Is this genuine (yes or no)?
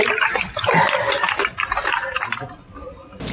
yes